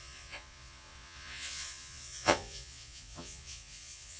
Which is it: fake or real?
fake